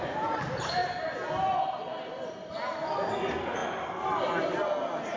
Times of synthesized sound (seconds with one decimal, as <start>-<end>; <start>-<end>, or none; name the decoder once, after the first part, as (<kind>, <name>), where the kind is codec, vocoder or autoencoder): none